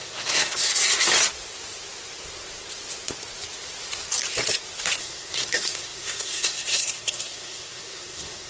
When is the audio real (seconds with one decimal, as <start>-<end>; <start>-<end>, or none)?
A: 0.7-5.0